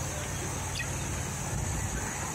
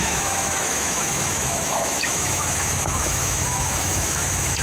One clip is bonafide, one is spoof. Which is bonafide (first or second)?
first